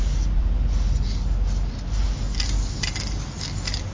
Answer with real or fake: real